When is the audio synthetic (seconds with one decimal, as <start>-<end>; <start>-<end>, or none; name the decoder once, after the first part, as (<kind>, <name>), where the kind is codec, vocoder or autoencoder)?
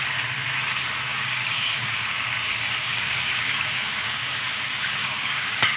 1.1-4.6 (codec, DAC); 5.0-5.8